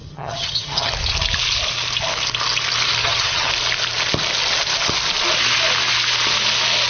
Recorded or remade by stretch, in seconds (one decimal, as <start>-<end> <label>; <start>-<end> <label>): 0.0-0.9 remade; 0.9-3.0 recorded; 3.0-3.5 remade; 3.5-6.9 recorded